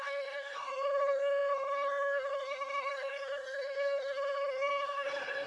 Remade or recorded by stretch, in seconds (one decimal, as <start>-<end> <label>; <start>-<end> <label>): 0.0-5.5 remade